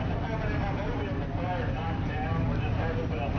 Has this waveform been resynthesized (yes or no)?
no